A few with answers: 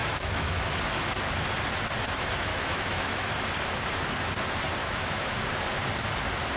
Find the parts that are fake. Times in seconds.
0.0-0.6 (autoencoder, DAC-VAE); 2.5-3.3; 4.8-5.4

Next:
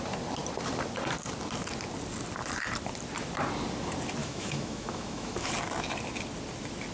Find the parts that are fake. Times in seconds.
4.2-5.5 (autoencoder, DAC-VAE)

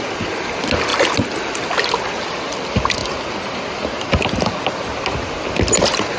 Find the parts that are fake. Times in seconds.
none

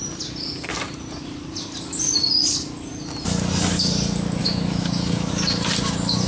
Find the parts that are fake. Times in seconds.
4.4-5.3 (autoencoder, DAC-VAE)

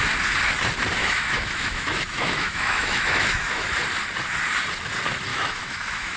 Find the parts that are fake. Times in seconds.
1.0-3.7 (autoencoder, DAC-VAE); 5.3-6.2

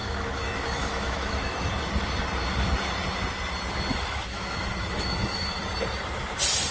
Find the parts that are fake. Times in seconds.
0.0-1.7 (autoencoder, DAC-VAE); 3.9-5.7

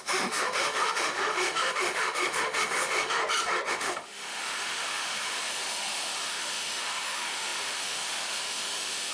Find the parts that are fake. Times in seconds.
0.0-3.2 (autoencoder, DAC-VAE); 3.7-9.1